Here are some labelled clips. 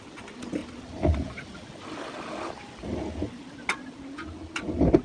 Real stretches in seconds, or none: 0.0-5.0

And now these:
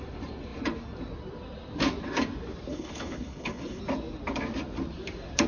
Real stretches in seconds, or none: 0.0-2.7; 3.8-5.5

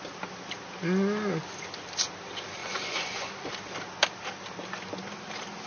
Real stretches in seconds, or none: 0.0-2.6; 3.3-5.7

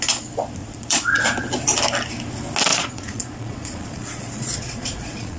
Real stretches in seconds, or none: 0.0-0.6; 1.2-2.7

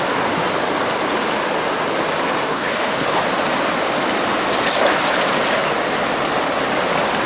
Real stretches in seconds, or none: 0.0-2.5; 3.2-7.3

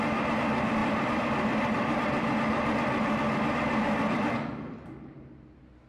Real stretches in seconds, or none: 0.0-0.8; 4.3-5.9

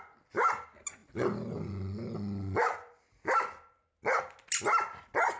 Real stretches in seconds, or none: 0.0-5.4